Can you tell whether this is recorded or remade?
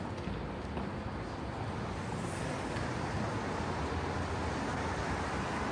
recorded